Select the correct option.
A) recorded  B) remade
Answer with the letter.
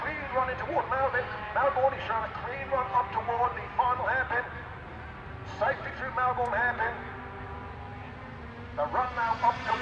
A